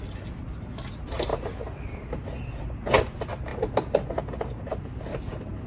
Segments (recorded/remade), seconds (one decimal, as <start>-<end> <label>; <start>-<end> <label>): 0.0-5.7 recorded